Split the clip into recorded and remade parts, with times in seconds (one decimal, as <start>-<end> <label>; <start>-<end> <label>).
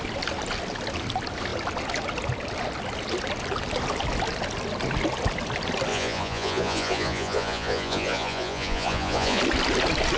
0.0-5.9 recorded; 5.9-9.4 remade; 9.4-10.2 recorded